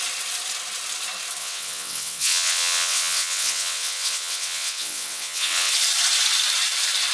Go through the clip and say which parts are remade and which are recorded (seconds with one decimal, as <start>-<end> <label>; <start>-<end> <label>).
0.0-1.4 recorded; 1.4-5.7 remade; 5.7-7.1 recorded